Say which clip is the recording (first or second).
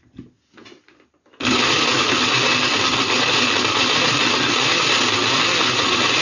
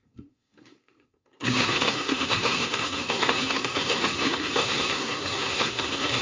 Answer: first